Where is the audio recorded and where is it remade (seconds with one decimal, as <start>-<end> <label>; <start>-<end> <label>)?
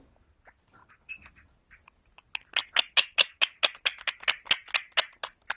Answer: 0.0-5.6 recorded